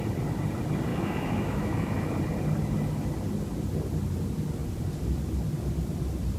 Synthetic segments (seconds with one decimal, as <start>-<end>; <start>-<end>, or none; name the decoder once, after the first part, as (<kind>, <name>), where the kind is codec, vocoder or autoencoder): 0.9-2.1 (autoencoder, DAC-VAE)